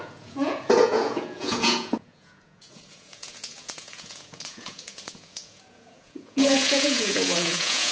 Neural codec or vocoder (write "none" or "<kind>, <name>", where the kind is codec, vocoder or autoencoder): vocoder, Vocos